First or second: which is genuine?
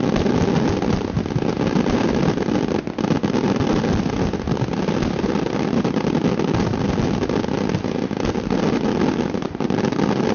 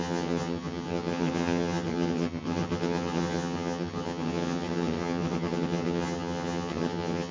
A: first